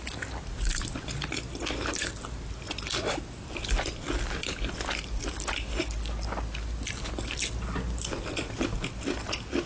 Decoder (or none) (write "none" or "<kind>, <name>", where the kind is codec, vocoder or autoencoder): none